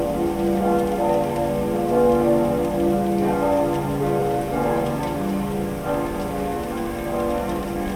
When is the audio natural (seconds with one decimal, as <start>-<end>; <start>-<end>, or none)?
0.0-4.2; 5.0-8.0